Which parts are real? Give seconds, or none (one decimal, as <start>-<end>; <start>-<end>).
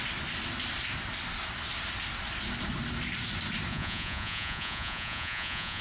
0.0-3.7